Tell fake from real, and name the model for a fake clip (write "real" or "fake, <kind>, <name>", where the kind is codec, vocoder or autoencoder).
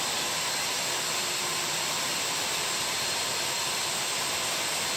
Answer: fake, vocoder, BigVGAN v2